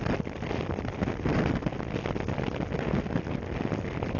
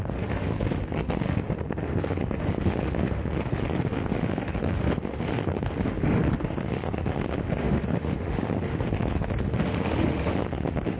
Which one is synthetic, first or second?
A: second